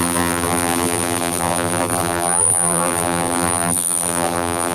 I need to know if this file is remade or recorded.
remade